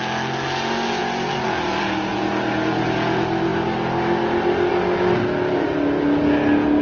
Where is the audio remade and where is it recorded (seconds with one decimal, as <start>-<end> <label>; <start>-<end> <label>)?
0.0-6.8 recorded